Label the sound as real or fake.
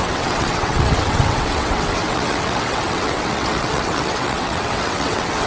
fake